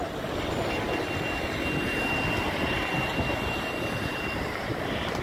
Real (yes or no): yes